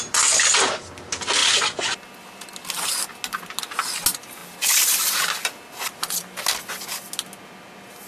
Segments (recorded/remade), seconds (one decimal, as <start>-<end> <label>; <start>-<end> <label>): 0.0-8.1 recorded